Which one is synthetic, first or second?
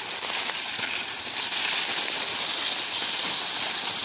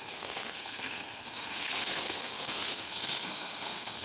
second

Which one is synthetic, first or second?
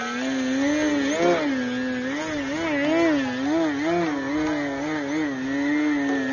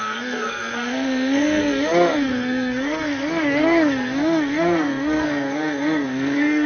second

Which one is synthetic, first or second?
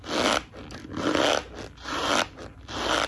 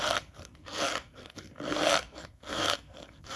second